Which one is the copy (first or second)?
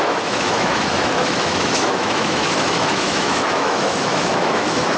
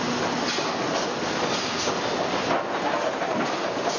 first